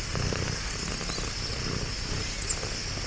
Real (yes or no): yes